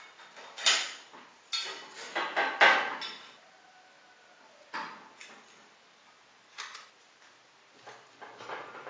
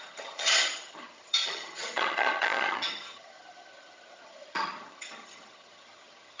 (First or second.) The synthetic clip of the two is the second